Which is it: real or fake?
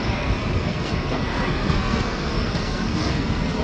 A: fake